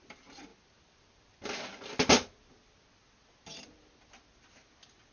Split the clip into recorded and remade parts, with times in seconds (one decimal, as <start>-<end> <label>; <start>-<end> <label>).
0.0-5.1 recorded